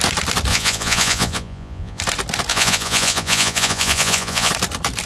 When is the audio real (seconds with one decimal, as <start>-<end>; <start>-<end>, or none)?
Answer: 0.0-0.5; 2.0-2.5; 4.5-5.1